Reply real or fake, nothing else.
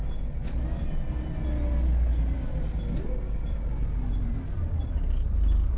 real